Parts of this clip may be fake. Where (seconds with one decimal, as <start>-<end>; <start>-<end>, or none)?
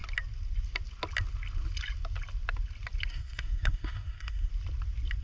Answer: 3.1-4.5